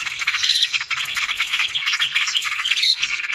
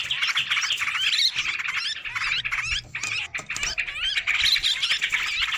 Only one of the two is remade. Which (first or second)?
first